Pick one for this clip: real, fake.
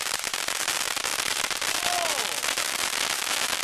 real